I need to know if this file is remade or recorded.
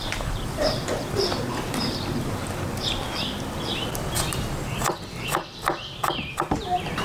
remade